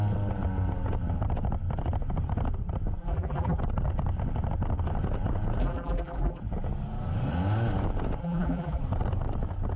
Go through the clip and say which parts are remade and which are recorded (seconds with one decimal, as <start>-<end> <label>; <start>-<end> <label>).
0.0-3.0 recorded; 3.0-3.6 remade; 3.6-5.6 recorded; 5.6-6.4 remade; 6.4-8.2 recorded; 8.2-8.8 remade; 8.8-9.8 recorded